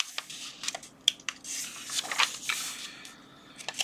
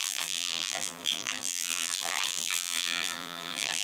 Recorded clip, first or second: first